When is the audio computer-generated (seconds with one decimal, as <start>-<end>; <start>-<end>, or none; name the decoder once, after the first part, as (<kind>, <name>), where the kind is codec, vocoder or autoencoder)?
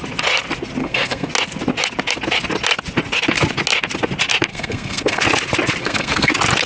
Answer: 0.8-1.3 (codec, SNAC); 4.5-5.2; 5.8-6.3